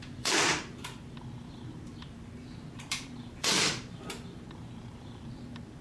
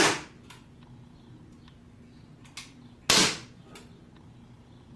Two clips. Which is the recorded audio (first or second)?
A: second